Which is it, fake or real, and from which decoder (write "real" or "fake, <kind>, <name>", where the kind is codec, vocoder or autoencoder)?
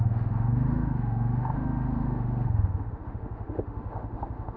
fake, autoencoder, DAC-VAE